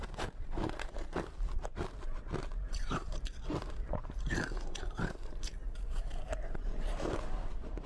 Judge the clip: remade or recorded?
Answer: remade